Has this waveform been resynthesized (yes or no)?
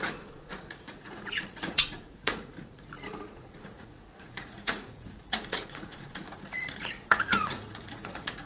yes